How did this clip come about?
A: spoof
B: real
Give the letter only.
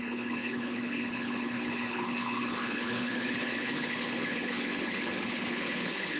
A